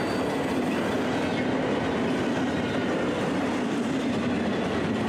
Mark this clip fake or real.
real